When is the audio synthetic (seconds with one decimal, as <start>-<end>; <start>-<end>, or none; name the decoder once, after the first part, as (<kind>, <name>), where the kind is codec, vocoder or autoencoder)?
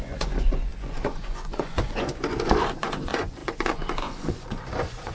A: 0.0-5.1 (vocoder, Vocos)